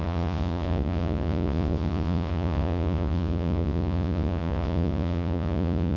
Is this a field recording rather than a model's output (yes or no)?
no